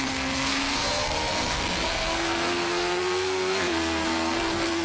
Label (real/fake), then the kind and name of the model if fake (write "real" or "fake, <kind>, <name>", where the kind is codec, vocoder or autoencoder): fake, codec, SNAC